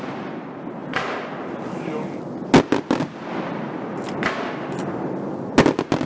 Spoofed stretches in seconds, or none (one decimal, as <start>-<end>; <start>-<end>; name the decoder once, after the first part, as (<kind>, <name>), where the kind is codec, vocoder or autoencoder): none